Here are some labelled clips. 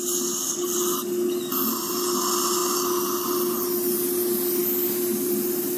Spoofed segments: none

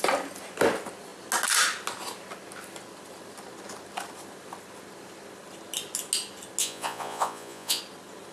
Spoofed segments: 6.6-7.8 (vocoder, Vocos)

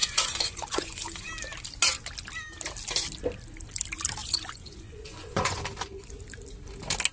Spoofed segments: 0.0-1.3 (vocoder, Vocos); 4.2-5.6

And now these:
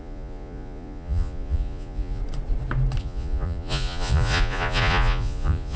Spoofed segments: 0.0-2.2 (vocoder, Vocos); 3.0-5.8